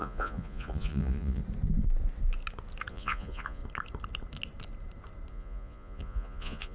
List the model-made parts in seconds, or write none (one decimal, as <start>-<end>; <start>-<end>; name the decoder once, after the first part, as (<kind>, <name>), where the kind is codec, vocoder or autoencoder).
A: 0.0-1.4 (vocoder, Vocos); 2.9-3.6; 5.3-6.7